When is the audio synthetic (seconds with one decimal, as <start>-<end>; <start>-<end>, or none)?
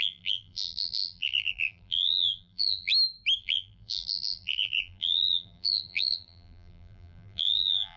0.0-2.9; 3.4-8.0